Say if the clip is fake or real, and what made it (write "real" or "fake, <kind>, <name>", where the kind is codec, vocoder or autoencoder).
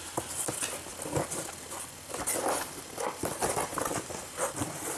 real